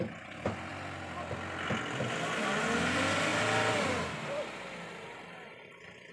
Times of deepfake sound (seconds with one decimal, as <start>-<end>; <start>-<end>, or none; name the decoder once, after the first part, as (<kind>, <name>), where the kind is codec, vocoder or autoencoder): none